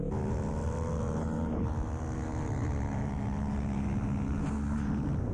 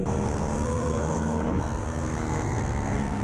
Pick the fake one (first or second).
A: second